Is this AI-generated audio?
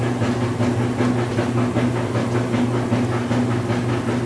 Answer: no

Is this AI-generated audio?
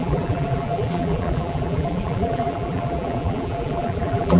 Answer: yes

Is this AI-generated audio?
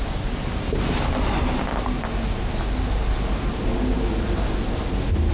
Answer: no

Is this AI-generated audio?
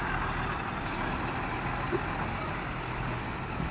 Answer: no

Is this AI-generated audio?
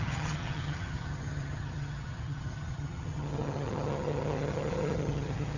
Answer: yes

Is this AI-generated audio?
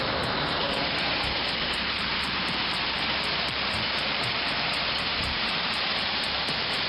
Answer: yes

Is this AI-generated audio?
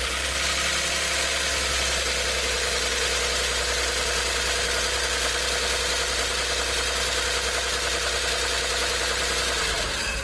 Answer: no